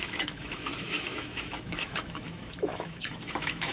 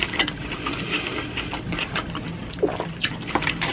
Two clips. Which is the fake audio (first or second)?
first